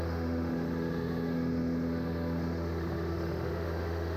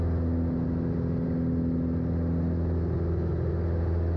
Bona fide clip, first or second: second